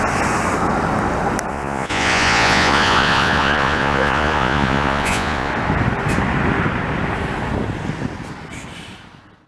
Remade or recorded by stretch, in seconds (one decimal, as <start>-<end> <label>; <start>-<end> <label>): 0.0-1.5 recorded; 1.5-5.5 remade; 5.5-9.5 recorded